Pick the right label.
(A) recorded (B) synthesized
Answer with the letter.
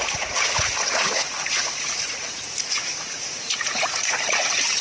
B